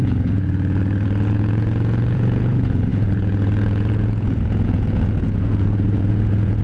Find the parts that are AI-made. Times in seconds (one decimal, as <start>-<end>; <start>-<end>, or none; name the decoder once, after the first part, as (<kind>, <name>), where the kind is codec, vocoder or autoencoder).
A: 0.0-6.6 (vocoder, Vocos)

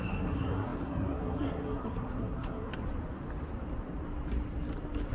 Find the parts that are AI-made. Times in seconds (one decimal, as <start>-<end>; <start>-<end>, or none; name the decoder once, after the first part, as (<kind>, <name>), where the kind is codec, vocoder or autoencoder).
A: 0.0-2.7 (codec, SNAC)